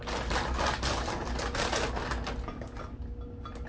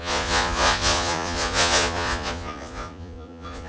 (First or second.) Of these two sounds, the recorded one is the first